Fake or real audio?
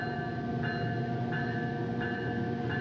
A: real